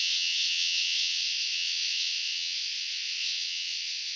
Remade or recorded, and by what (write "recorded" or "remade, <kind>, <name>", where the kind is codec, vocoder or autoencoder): remade, vocoder, WaveNeXt